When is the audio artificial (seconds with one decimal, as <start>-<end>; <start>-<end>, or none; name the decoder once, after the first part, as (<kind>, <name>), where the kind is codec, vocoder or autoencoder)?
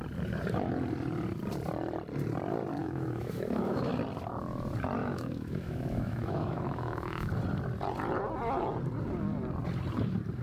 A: 2.8-3.9 (autoencoder, DAC-VAE); 5.0-7.3